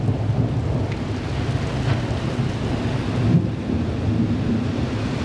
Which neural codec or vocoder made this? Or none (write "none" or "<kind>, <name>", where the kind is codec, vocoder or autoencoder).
none